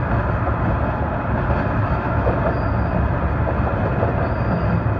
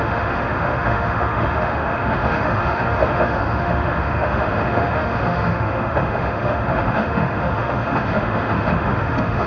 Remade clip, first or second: second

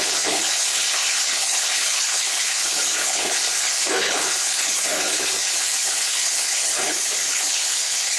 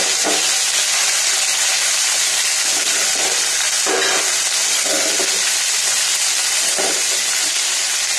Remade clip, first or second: first